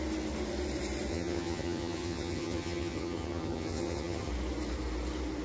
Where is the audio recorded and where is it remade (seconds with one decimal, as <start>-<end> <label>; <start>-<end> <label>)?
0.0-1.1 recorded; 1.1-4.3 remade; 4.3-5.4 recorded